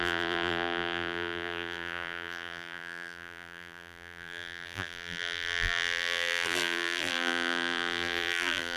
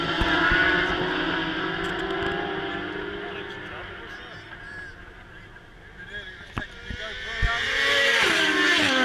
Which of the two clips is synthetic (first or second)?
first